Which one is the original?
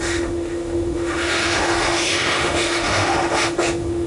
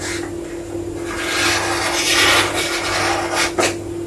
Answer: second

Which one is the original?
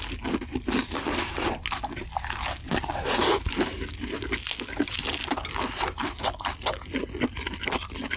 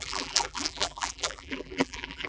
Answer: first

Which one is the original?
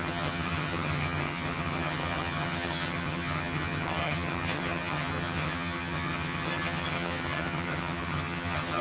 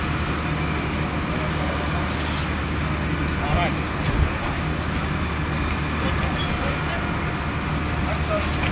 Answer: second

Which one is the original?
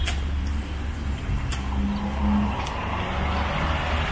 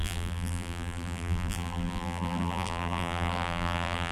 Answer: first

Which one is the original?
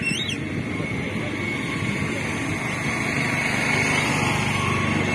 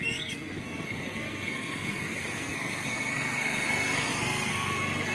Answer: first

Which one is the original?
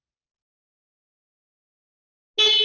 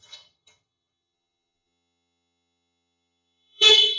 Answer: first